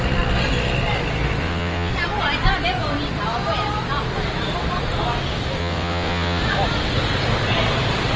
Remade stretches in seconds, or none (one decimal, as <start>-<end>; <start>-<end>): 1.4-1.9; 5.6-6.4